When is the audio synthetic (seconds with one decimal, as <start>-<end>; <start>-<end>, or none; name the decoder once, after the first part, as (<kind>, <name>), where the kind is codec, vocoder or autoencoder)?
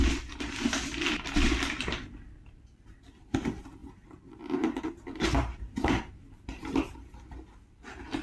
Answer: 3.8-6.0 (vocoder, BigVGAN v2)